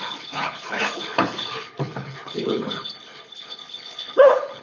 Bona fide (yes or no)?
no